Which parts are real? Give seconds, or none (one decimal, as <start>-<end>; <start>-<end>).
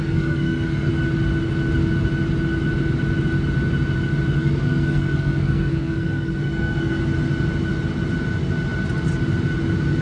0.9-4.4; 7.0-10.0